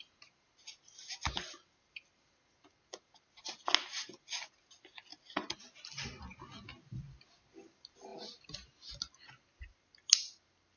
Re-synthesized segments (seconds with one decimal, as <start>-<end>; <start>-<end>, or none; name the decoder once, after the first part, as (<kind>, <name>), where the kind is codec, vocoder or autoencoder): none